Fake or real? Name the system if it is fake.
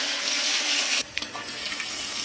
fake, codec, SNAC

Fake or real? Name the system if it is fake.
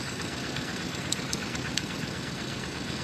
fake, codec, SNAC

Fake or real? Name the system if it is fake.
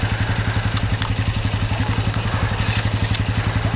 real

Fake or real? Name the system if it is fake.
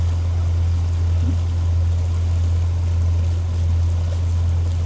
real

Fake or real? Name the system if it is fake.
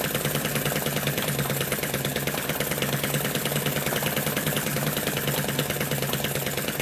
real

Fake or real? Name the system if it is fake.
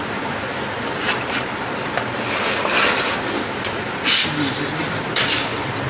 real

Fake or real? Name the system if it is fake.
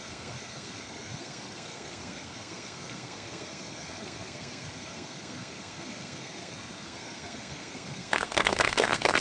fake, codec, SNAC